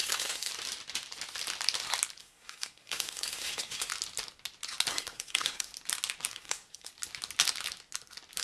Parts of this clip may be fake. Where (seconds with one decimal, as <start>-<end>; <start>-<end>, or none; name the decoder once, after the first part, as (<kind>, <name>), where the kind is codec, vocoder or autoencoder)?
0.0-0.5 (codec, SNAC); 2.2-3.9; 4.9-5.7; 6.3-6.9